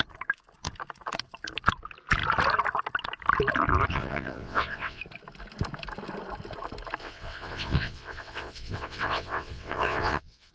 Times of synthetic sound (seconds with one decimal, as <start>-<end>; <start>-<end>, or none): 3.9-5.0; 7.0-10.5